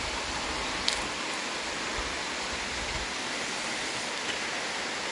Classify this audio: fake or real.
real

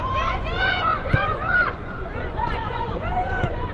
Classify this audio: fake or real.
fake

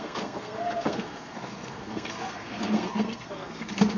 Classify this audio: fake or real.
fake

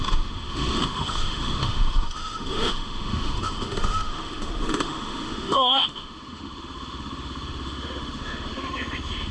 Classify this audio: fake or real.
fake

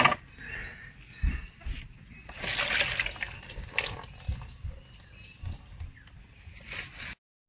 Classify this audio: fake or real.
real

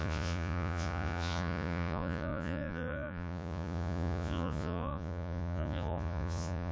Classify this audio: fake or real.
fake